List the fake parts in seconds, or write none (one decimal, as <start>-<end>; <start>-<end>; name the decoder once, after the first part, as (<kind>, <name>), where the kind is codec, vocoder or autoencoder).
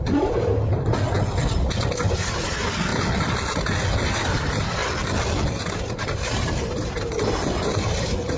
0.0-0.9 (vocoder, BigVGAN v2); 2.1-2.9; 4.1-4.8; 5.6-8.4